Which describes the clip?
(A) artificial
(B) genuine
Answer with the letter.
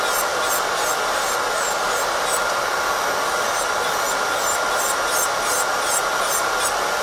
B